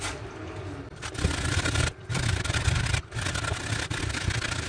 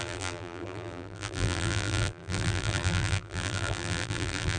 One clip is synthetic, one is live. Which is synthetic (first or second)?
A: second